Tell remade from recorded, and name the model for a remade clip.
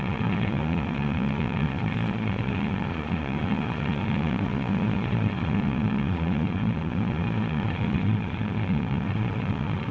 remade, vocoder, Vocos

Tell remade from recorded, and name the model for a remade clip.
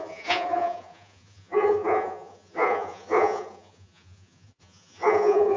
remade, vocoder, Vocos